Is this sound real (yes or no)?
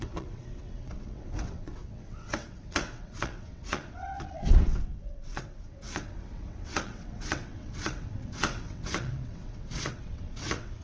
no